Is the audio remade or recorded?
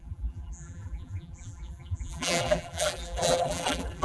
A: remade